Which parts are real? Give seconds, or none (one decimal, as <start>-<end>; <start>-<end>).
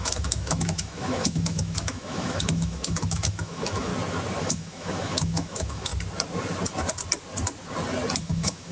3.9-4.4; 5.9-8.2